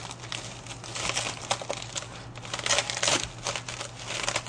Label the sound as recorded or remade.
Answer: recorded